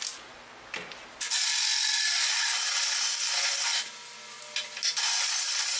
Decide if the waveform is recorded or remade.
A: recorded